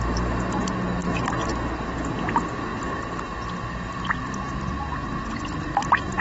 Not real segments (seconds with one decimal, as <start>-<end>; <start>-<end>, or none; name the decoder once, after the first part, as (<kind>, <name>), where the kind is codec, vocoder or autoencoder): none